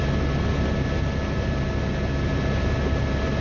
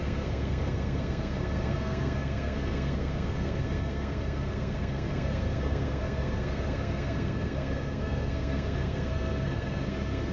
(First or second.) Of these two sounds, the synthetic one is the second